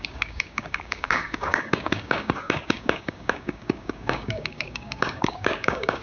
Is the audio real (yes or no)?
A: no